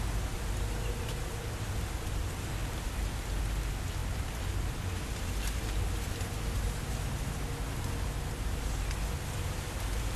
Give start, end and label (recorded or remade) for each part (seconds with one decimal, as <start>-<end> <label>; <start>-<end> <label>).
0.0-2.6 recorded; 2.6-3.4 remade; 3.4-4.0 recorded; 4.0-4.7 remade; 4.7-10.2 recorded